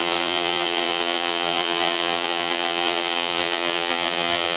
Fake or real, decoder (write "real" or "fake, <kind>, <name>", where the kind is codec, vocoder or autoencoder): fake, vocoder, BigVGAN v2